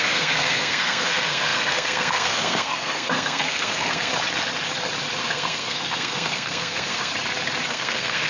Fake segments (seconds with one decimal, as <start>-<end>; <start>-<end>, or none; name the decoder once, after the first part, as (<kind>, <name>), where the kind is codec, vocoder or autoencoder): 0.0-4.1 (codec, SNAC); 5.2-7.1; 7.7-8.3